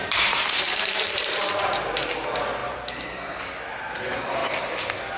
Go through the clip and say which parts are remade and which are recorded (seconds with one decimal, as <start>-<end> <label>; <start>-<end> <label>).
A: 0.0-2.1 remade; 2.1-5.2 recorded